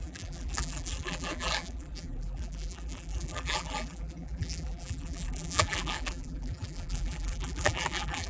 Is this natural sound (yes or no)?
no